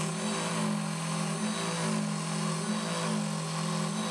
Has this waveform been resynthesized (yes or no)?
no